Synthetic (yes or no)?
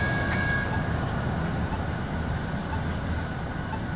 no